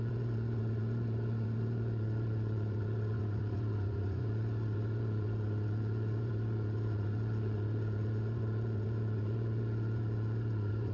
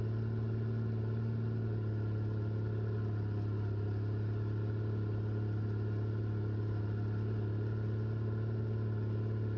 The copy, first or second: first